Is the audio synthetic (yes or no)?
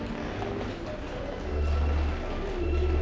no